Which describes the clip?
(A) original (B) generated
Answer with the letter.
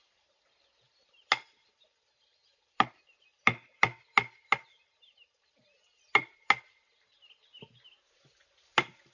A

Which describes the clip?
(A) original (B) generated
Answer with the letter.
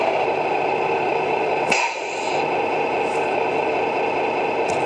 B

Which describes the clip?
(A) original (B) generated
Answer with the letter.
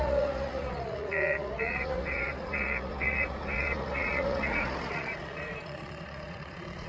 B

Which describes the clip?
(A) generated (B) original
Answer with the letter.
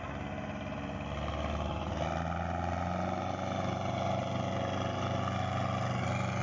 B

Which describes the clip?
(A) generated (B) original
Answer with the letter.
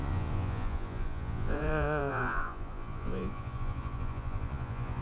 A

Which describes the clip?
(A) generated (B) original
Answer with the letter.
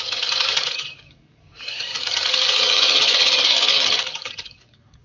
A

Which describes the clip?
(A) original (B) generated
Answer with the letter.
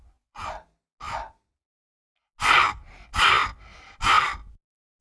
A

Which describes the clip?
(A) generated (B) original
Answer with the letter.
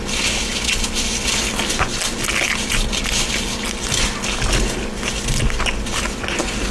B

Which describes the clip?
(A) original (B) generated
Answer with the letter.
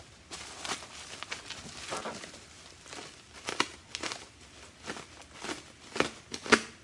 A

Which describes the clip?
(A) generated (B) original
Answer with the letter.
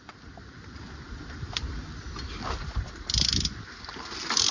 B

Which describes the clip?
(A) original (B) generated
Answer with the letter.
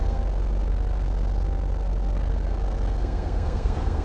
B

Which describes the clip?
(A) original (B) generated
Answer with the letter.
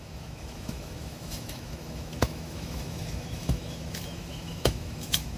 B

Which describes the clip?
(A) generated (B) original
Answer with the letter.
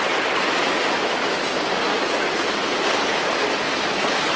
B